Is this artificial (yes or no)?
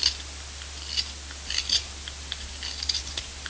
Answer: no